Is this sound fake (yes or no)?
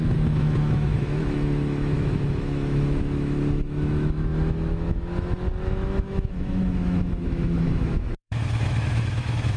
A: yes